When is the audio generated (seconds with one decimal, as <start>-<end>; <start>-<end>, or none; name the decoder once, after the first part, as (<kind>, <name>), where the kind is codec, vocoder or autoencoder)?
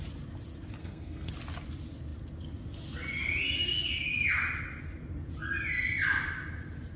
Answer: 0.8-1.3 (codec, SNAC)